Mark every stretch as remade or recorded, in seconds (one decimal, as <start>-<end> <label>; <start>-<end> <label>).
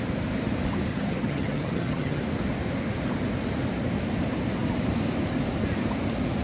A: 0.0-0.9 recorded; 0.9-2.2 remade; 2.2-6.4 recorded